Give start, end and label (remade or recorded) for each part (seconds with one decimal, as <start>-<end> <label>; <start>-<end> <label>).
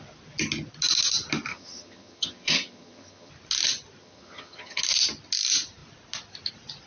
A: 0.0-1.5 recorded; 1.5-3.3 remade; 3.3-4.0 recorded; 4.0-4.8 remade; 4.8-6.9 recorded